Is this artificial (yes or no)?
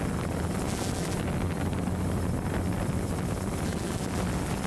no